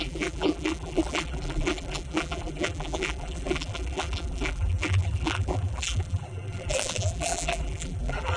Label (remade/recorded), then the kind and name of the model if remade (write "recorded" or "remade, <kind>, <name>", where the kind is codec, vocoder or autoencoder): remade, vocoder, BigVGAN v2